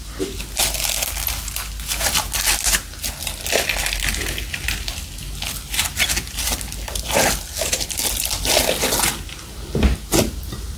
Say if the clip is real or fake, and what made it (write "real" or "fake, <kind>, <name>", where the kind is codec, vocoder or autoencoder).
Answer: real